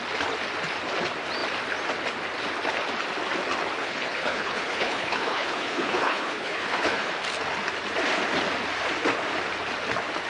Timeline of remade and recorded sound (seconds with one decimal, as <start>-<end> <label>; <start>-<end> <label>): 0.0-3.8 recorded; 3.8-7.1 remade; 7.1-10.3 recorded